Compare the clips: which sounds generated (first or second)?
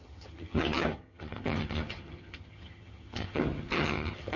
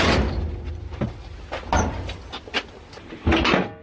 first